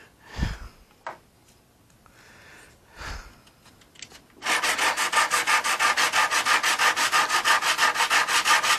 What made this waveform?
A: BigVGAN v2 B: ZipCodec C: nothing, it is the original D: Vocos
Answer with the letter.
C